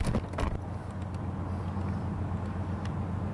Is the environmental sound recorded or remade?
recorded